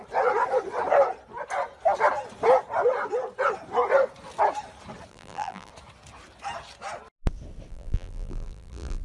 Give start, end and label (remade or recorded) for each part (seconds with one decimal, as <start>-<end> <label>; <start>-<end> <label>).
0.0-5.1 recorded; 5.1-5.7 remade; 5.7-7.7 recorded; 7.7-9.0 remade